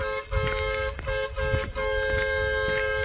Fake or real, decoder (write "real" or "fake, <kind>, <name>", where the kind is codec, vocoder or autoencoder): real